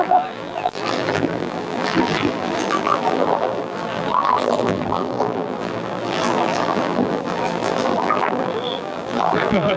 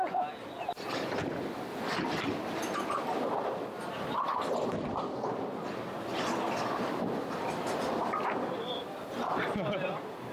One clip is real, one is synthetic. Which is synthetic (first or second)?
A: first